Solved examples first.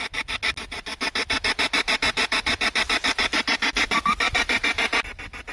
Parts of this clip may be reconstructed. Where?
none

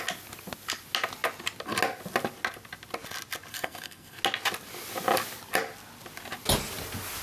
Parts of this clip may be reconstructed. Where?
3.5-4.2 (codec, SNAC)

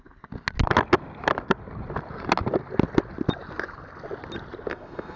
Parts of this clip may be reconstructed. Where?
4.7-5.2 (codec, SNAC)

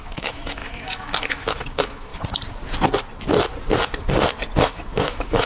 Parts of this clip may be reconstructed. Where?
0.0-2.1 (autoencoder, DAC-VAE); 4.6-5.5